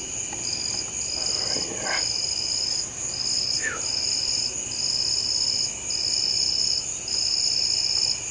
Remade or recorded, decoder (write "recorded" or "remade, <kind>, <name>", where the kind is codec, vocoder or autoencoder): recorded